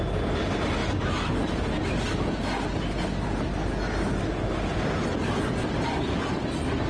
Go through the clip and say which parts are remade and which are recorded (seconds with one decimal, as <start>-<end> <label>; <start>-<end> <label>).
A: 0.0-6.9 recorded

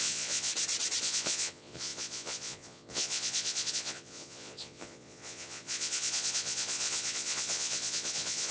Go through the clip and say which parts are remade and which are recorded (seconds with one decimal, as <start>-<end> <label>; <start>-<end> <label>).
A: 0.0-0.5 remade; 0.5-1.0 recorded; 1.0-8.5 remade

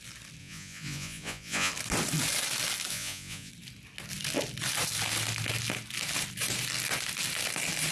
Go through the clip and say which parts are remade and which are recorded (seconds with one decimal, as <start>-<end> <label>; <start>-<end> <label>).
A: 0.0-0.4 recorded; 0.4-1.7 remade; 1.7-2.9 recorded; 2.9-3.5 remade; 3.5-7.9 recorded

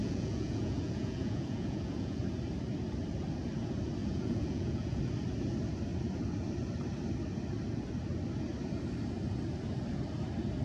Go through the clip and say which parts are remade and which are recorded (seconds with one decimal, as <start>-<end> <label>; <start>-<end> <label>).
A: 0.0-2.2 remade; 2.2-4.0 recorded; 4.0-5.0 remade; 5.0-10.6 recorded

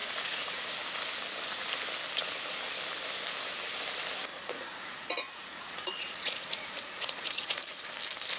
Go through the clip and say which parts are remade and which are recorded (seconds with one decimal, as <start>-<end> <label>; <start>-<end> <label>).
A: 0.0-0.7 remade; 0.7-4.3 recorded; 4.3-7.8 remade; 7.8-8.4 recorded

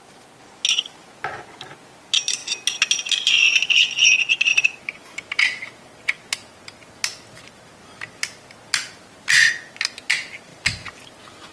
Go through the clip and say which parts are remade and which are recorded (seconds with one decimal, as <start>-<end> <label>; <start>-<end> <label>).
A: 0.0-11.5 recorded

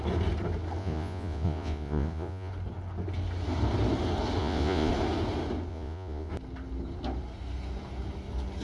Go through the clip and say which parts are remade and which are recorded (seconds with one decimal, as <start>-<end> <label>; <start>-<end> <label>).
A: 0.0-0.8 recorded; 0.8-2.5 remade; 2.5-4.4 recorded; 4.4-4.9 remade; 4.9-5.7 recorded; 5.7-6.3 remade; 6.3-8.6 recorded

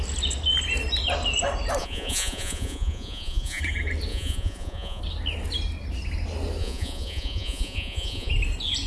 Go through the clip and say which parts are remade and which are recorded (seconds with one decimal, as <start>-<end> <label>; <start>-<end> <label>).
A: 0.0-1.8 recorded; 1.8-3.6 remade; 3.6-4.1 recorded; 4.1-5.0 remade; 5.0-6.6 recorded; 6.6-8.3 remade; 8.3-8.9 recorded